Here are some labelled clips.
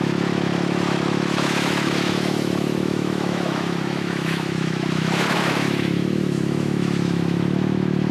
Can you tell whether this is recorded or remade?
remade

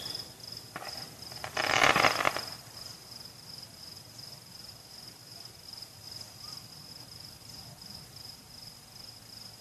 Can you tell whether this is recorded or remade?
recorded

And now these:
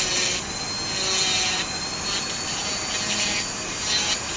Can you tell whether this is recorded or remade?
recorded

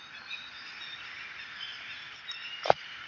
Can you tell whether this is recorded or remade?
recorded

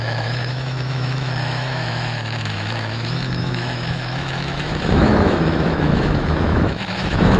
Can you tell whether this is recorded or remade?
remade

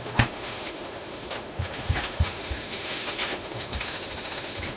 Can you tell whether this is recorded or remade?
remade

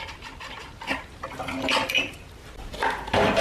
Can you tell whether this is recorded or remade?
recorded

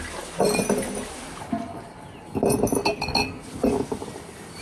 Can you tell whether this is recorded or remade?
recorded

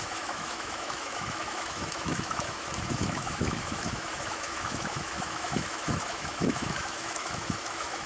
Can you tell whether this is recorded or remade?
remade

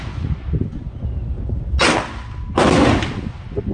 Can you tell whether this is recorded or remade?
recorded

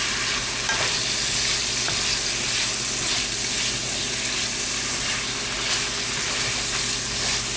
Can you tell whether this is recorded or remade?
recorded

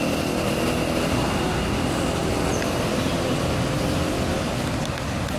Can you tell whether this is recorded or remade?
recorded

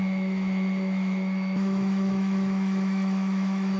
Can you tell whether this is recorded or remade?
remade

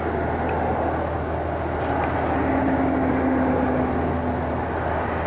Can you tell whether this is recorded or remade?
recorded